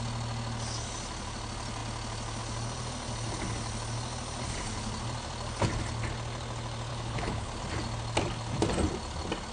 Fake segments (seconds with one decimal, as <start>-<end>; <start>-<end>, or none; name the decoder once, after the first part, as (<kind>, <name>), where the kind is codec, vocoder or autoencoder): 6.9-7.5 (codec, HILCodec)